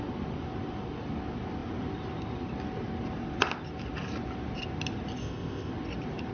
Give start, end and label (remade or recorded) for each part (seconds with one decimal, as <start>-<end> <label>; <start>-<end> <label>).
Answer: 0.0-5.2 recorded; 5.2-5.7 remade; 5.7-6.3 recorded